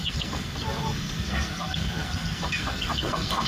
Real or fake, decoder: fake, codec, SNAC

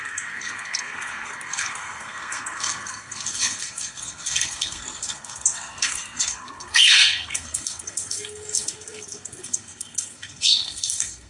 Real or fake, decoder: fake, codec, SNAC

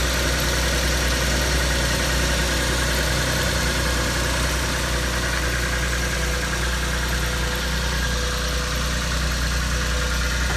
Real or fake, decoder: real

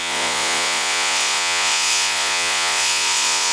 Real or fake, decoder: fake, vocoder, Vocos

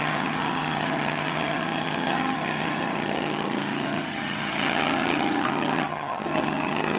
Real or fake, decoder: fake, vocoder, HiFi-GAN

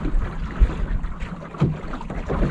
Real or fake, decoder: real